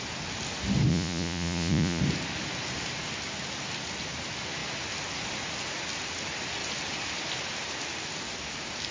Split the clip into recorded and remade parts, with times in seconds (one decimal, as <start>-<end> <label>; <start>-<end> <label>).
0.0-0.9 recorded; 0.9-2.0 remade; 2.0-8.9 recorded